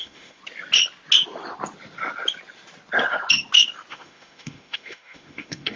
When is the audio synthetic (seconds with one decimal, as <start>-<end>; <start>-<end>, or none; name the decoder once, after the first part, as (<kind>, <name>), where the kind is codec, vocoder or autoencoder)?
0.0-0.4 (autoencoder, DAC-VAE); 3.9-5.8